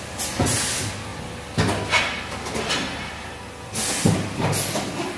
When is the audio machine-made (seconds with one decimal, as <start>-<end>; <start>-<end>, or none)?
none

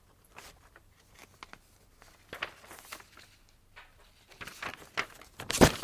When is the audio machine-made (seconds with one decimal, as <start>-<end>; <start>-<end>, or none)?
0.0-1.2; 3.9-4.5; 5.1-5.8

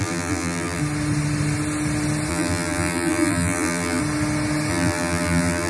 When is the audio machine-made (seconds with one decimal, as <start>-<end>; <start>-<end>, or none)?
0.0-0.8; 2.3-4.0; 4.7-5.7

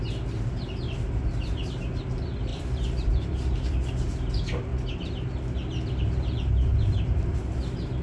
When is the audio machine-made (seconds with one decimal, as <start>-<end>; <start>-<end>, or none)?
2.5-3.9

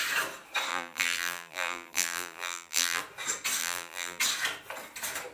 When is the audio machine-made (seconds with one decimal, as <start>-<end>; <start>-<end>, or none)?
0.7-3.0; 3.6-4.2